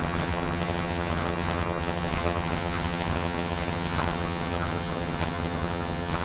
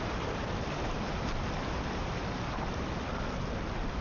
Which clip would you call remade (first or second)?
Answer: first